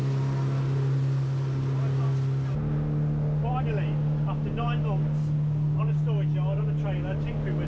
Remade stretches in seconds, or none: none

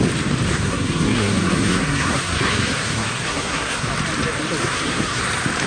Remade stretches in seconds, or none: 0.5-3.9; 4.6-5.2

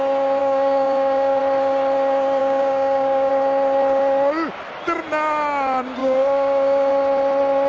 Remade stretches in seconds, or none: 0.4-1.4; 2.4-3.3; 6.0-6.9

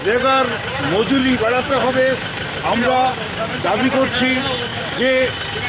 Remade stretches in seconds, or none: 1.2-1.9; 3.1-3.6; 4.7-5.3